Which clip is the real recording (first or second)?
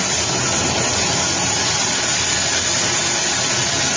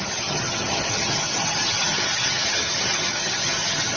first